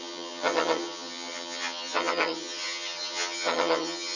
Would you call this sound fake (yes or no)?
yes